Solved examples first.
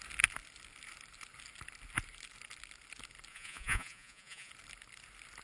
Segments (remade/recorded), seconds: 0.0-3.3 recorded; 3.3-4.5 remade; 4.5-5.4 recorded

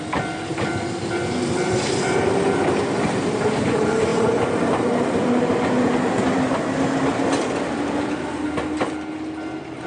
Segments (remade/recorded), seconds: 0.0-9.9 recorded

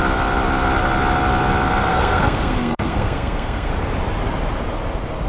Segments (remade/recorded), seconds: 0.0-1.9 recorded; 1.9-3.7 remade; 3.7-5.3 recorded

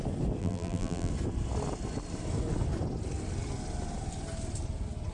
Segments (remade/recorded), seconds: 0.0-0.4 recorded; 0.4-1.1 remade; 1.1-5.1 recorded

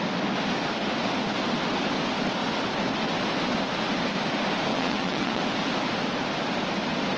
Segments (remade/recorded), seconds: 0.0-4.7 recorded; 4.7-5.4 remade; 5.4-7.2 recorded

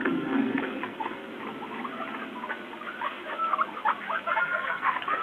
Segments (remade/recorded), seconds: 0.0-1.3 remade; 1.3-4.4 recorded; 4.4-5.2 remade

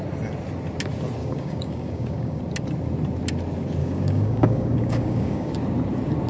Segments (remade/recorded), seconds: 0.0-1.2 recorded; 1.2-2.4 remade; 2.4-3.8 recorded; 3.8-5.5 remade; 5.5-6.3 recorded